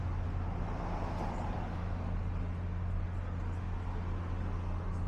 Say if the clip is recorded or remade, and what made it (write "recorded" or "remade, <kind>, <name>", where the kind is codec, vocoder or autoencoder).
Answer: recorded